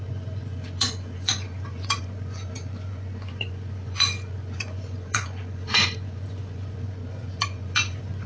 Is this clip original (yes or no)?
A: no